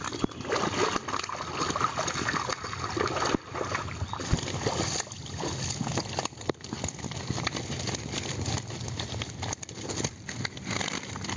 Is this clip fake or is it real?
real